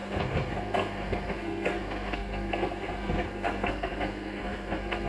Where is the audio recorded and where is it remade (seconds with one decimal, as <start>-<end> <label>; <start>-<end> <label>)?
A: 0.0-5.1 remade